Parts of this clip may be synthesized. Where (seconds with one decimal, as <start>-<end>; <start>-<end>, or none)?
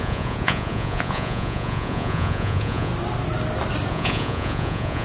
0.0-2.9; 3.9-5.0